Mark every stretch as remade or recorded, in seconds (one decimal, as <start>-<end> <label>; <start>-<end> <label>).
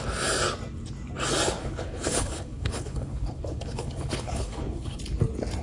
0.0-1.6 recorded; 1.6-5.0 remade; 5.0-5.6 recorded